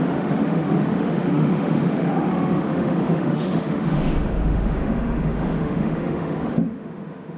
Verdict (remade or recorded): remade